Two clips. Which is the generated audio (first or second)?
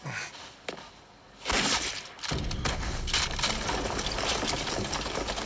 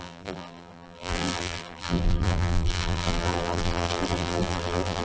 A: second